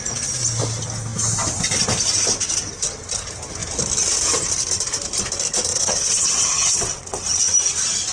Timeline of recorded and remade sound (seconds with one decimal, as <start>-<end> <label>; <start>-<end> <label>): 0.0-5.7 recorded; 5.7-7.5 remade; 7.5-8.1 recorded